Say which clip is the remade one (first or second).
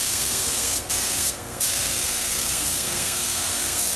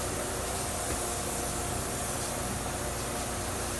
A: first